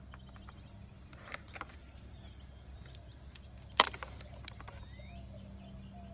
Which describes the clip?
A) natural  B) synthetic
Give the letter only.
A